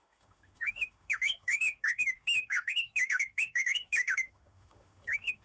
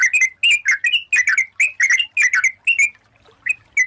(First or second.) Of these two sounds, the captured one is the second